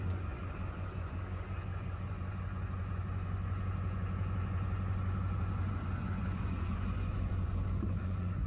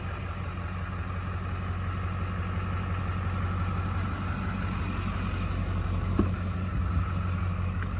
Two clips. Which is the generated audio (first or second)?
first